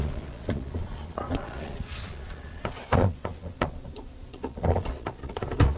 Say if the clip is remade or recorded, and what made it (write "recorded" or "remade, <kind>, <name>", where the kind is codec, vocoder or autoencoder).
remade, vocoder, Vocos